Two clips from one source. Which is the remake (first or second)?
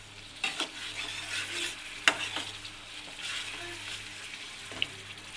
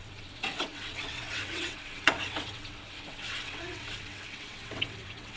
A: second